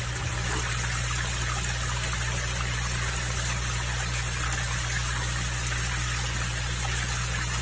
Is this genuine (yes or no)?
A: yes